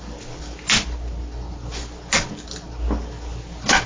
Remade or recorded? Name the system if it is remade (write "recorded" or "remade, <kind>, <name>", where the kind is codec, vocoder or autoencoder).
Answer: recorded